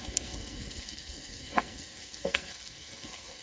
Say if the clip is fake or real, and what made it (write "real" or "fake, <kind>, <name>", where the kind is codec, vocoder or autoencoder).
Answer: fake, codec, SNAC